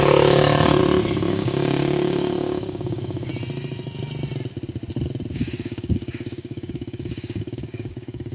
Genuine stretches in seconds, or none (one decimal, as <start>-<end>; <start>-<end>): 0.8-1.3; 3.3-5.3